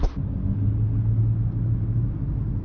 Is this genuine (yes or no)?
yes